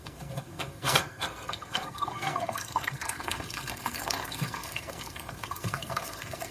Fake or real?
fake